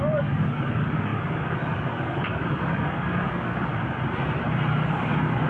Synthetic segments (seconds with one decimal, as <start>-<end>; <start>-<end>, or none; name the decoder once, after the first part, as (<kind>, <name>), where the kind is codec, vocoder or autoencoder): 0.0-3.7 (codec, DAC); 4.9-5.5